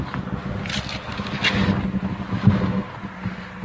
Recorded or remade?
recorded